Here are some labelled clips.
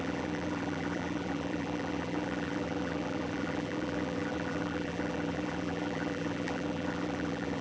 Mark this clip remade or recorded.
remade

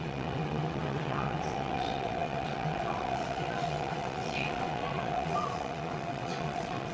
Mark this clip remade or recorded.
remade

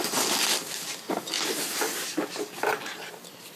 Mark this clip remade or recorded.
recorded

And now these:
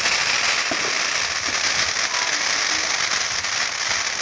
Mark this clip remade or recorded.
recorded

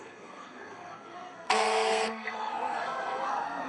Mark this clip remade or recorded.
remade